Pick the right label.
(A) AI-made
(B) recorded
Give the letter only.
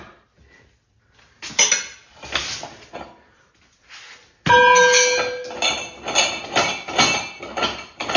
B